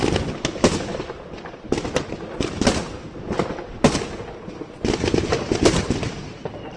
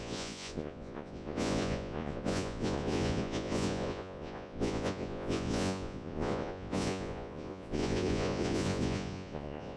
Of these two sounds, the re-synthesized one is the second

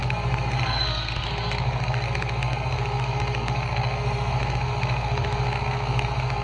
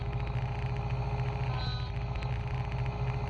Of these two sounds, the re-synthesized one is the first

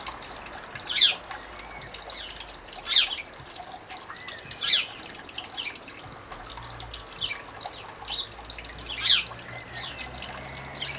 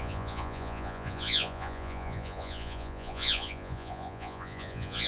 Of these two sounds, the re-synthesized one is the second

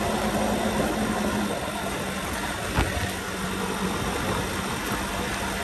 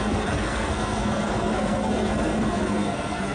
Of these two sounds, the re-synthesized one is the second